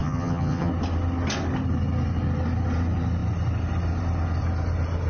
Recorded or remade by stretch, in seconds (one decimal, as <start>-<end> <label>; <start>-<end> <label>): 0.0-0.7 remade; 0.7-5.1 recorded